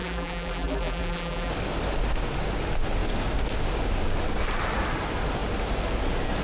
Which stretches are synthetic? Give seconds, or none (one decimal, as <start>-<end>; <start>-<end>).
0.0-1.5